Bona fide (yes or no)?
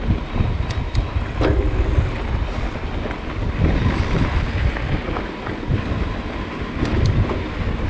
yes